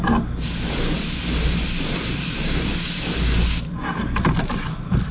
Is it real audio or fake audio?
real